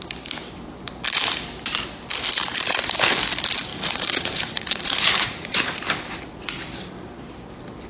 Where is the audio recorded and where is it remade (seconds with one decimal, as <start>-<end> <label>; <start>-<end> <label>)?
0.0-3.7 recorded; 3.7-5.8 remade; 5.8-7.9 recorded